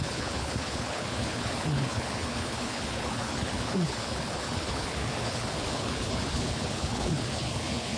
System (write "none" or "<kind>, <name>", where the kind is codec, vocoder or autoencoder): codec, HILCodec